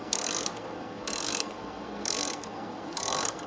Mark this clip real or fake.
fake